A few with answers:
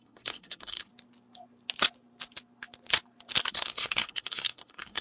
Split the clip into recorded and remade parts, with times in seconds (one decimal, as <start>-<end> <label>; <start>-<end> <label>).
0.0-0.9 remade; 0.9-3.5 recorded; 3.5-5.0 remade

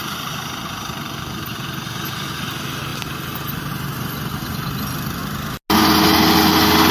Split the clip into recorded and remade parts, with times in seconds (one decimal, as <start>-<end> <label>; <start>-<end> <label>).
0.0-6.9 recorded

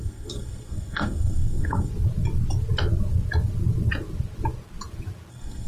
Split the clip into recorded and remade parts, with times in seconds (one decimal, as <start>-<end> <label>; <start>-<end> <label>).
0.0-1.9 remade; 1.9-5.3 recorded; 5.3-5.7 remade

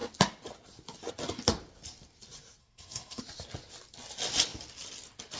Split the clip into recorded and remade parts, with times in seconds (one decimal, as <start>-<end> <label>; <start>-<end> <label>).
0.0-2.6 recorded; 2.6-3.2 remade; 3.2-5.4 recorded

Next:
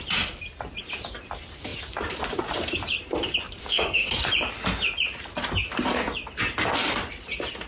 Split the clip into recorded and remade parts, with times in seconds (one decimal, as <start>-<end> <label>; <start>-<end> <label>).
0.0-3.6 recorded; 3.6-4.1 remade; 4.1-7.7 recorded